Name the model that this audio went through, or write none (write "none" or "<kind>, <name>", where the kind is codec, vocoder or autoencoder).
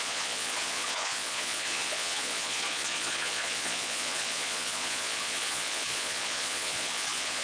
vocoder, Vocos